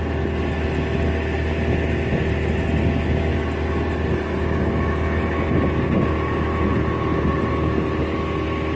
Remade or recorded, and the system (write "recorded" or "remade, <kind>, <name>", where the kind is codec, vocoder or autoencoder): recorded